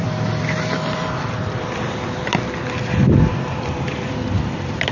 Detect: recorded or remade remade